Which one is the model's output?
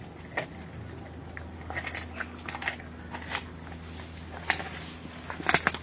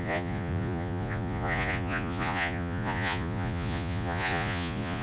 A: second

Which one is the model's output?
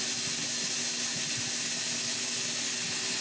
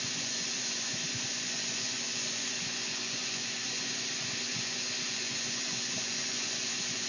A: second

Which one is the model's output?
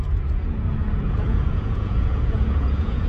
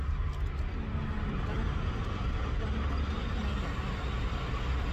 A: first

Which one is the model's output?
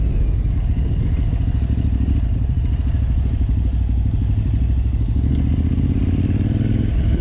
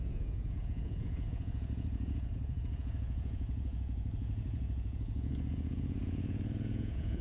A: second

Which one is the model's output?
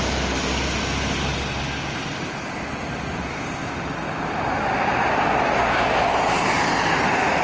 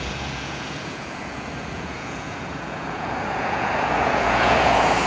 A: second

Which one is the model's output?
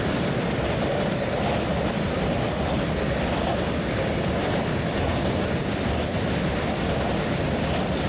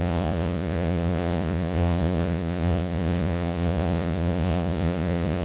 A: second